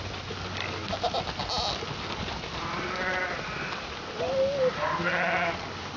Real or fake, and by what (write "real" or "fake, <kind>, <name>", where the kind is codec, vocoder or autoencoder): real